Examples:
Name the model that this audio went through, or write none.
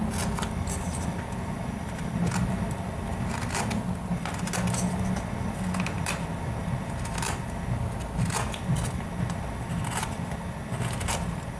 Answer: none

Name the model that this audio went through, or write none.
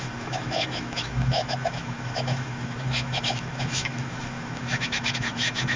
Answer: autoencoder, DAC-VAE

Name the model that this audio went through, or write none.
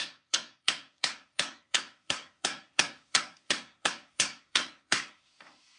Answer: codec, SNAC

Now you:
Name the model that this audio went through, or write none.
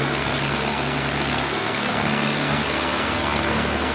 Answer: codec, SNAC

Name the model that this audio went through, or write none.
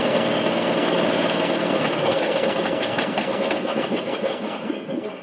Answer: codec, SNAC